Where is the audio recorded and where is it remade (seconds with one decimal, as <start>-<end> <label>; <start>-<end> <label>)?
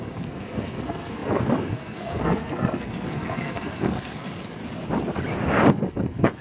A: 0.0-4.6 remade; 4.6-5.7 recorded; 5.7-6.4 remade